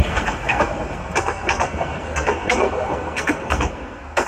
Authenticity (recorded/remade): remade